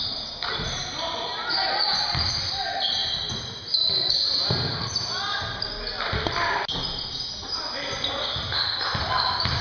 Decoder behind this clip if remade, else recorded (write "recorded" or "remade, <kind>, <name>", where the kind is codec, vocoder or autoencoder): recorded